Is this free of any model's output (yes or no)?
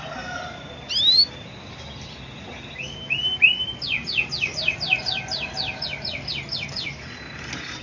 yes